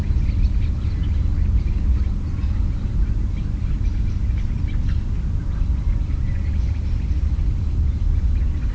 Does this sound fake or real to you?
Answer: real